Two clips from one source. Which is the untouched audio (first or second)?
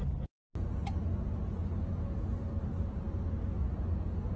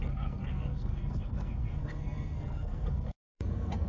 first